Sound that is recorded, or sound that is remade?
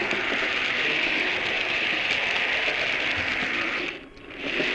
recorded